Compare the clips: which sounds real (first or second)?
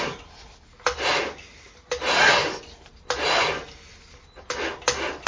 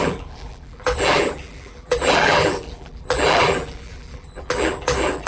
first